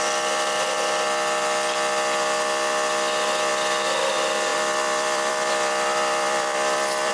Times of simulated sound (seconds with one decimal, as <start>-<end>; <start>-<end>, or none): 4.5-7.1